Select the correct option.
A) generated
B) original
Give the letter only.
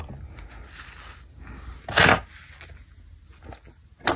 B